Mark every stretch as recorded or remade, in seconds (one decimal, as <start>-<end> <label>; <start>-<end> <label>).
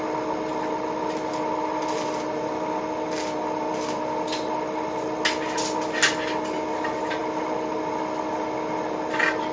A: 0.0-9.5 recorded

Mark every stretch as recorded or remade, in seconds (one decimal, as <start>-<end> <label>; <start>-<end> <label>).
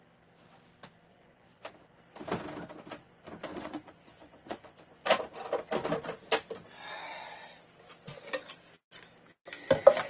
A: 0.0-1.1 recorded; 1.1-1.7 remade; 1.7-3.5 recorded; 3.5-5.2 remade; 5.2-10.1 recorded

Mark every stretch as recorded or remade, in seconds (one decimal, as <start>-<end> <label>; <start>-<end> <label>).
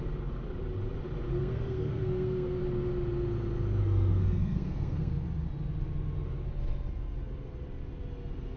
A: 0.0-1.4 recorded; 1.4-2.6 remade; 2.6-3.8 recorded; 3.8-5.1 remade; 5.1-8.6 recorded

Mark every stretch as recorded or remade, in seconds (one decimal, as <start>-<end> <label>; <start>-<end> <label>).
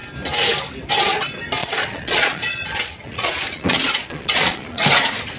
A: 0.0-1.6 recorded; 1.6-4.8 remade; 4.8-5.4 recorded